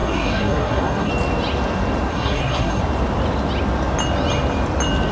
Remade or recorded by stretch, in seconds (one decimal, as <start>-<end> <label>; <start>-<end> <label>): 0.0-1.1 remade; 1.1-2.1 recorded; 2.1-2.8 remade; 2.8-5.1 recorded